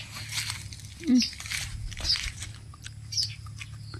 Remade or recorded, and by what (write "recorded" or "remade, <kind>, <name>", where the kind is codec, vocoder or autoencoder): recorded